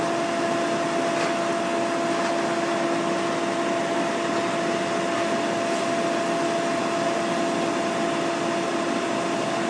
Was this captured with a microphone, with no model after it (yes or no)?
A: yes